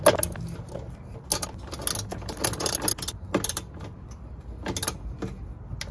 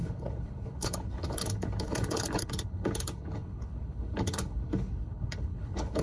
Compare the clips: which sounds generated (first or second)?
second